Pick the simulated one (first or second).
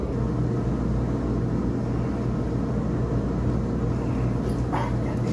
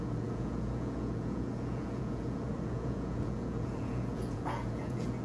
second